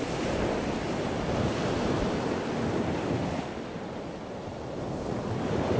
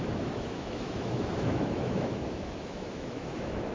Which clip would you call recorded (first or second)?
first